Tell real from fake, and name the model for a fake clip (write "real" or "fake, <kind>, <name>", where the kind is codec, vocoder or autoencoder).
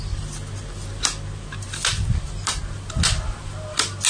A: real